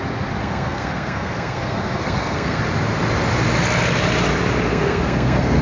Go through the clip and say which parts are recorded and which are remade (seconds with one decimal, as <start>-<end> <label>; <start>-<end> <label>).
0.0-0.4 recorded; 0.4-2.6 remade; 2.6-4.7 recorded; 4.7-5.6 remade